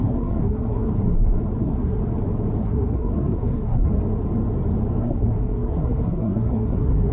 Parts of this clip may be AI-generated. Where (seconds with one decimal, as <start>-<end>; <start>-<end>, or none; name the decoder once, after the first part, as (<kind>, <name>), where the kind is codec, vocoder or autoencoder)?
0.0-0.9 (codec, SNAC); 1.6-2.0; 2.6-3.9; 5.0-7.1